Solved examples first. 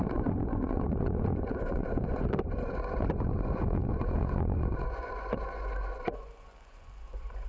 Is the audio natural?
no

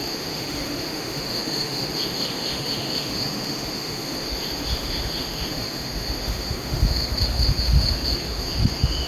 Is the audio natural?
no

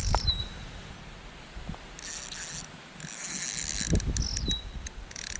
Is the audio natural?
yes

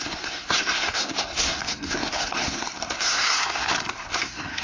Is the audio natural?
no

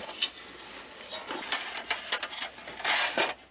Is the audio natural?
yes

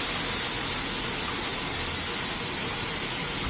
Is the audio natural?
yes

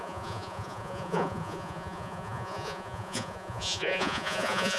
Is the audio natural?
no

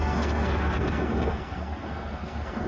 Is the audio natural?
no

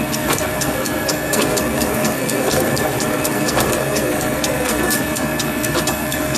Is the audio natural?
no